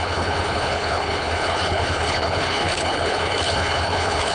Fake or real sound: fake